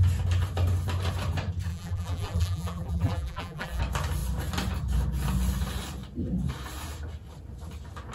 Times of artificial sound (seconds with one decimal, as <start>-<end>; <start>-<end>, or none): 1.7-3.8